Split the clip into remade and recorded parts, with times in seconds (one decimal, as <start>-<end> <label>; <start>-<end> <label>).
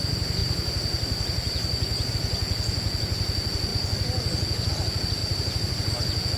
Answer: 0.0-0.4 recorded; 0.4-2.1 remade; 2.1-5.2 recorded; 5.2-5.9 remade; 5.9-6.4 recorded